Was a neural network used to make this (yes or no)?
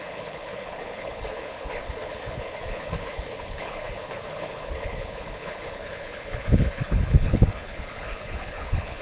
yes